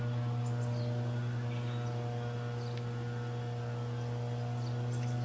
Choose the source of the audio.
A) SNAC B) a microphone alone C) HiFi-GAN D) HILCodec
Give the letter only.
B